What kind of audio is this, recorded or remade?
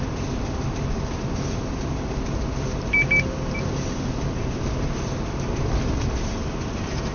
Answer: recorded